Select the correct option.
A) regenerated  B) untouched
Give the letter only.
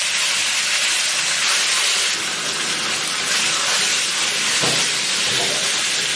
B